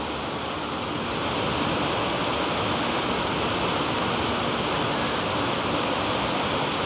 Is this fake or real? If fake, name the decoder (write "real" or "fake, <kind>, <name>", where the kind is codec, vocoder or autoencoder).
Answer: real